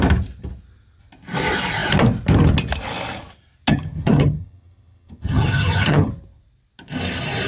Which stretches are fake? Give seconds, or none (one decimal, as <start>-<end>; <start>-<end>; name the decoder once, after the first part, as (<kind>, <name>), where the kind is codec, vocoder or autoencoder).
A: 3.7-6.1 (vocoder, HiFi-GAN)